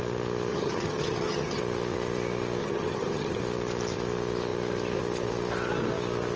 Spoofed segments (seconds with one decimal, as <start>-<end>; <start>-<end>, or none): 0.5-1.6; 2.6-3.4